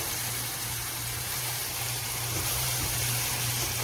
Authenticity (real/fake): fake